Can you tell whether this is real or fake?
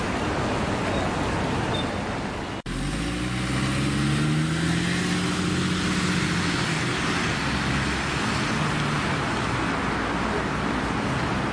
real